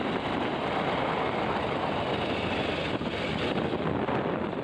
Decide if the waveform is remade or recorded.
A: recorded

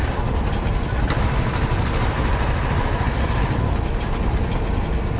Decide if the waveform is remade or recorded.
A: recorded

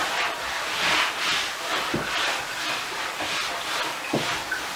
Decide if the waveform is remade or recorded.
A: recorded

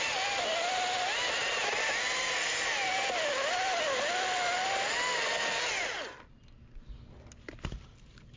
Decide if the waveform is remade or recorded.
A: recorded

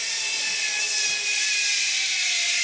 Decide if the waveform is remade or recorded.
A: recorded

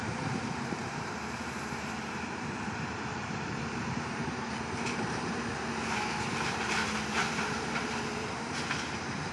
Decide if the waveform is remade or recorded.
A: remade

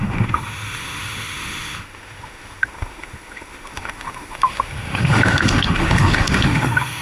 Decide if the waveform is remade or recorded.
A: remade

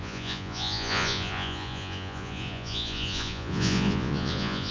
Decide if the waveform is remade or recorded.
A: remade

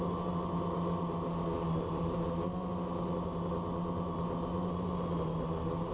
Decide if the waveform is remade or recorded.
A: recorded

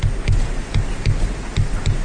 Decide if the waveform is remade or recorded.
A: recorded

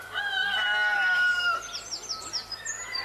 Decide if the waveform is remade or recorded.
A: recorded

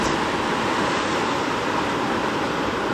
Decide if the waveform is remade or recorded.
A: recorded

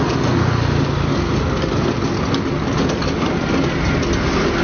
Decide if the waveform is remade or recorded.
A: recorded